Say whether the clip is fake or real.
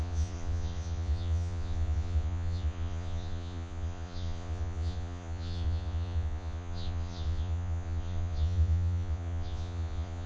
fake